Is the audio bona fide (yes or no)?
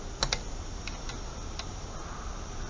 yes